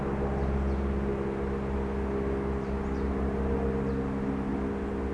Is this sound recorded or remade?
recorded